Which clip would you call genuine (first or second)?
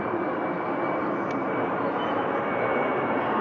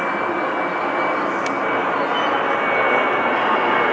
second